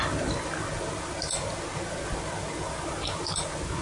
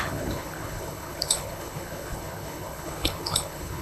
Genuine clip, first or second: first